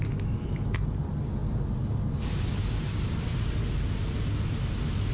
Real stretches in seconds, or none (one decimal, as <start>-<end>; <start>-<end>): 0.0-5.1